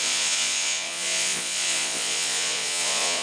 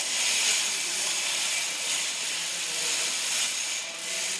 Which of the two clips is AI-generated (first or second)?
first